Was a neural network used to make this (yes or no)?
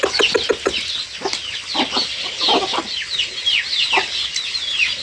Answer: no